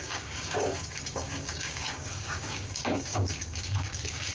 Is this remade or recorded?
remade